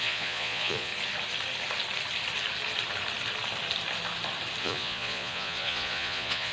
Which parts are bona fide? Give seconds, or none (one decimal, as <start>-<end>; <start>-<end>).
0.9-4.6